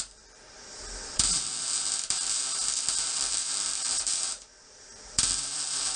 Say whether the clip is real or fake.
fake